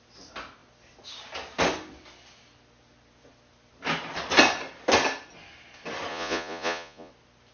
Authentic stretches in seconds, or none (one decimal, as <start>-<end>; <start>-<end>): 0.0-6.1; 7.1-7.5